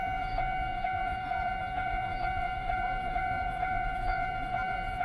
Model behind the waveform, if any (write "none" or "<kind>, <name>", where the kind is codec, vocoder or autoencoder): vocoder, Vocos